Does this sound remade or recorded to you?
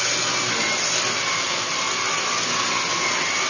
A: recorded